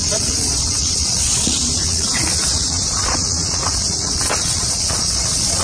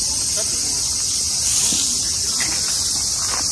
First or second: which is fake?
first